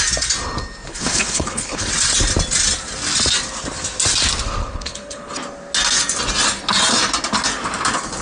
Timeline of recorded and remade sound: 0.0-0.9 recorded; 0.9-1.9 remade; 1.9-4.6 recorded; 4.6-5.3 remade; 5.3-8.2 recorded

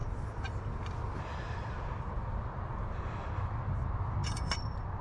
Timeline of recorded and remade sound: 0.0-5.0 recorded